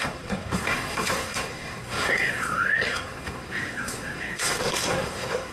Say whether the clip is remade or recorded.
remade